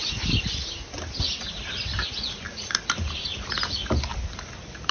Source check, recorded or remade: recorded